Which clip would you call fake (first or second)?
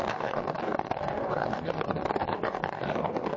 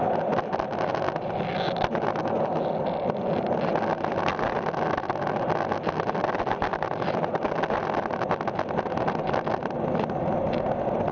first